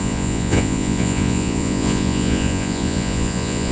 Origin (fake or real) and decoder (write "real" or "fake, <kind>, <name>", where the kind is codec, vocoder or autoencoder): fake, vocoder, Vocos